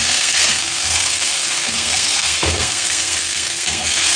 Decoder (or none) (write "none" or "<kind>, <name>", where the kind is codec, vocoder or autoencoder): codec, SNAC